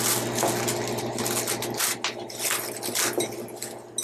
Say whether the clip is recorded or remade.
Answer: recorded